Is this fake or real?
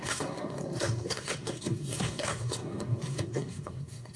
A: fake